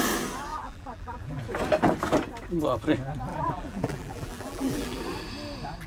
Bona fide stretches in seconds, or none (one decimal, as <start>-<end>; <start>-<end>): 0.0-0.5; 1.4-3.3; 5.0-5.9